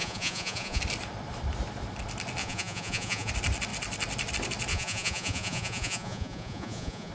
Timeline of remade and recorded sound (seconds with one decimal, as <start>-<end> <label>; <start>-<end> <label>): 0.0-0.8 remade; 0.8-2.4 recorded; 2.4-3.3 remade; 3.3-4.7 recorded; 4.7-7.1 remade